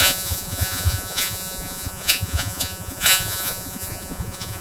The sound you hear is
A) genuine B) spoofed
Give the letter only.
B